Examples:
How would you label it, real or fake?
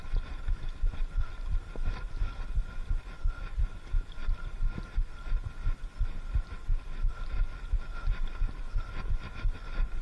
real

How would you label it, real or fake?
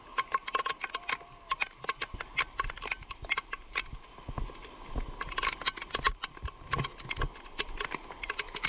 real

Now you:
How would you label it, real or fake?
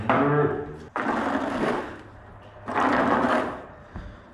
real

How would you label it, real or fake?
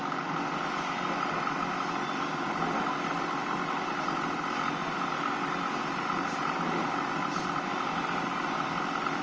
real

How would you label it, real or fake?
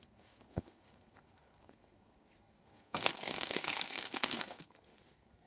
fake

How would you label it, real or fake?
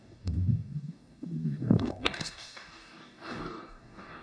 fake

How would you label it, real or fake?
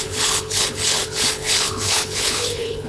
fake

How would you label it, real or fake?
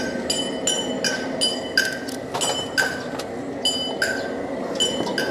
real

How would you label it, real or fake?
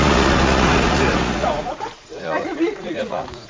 fake